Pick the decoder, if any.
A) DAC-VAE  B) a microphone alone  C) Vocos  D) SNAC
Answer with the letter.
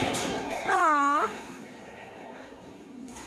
D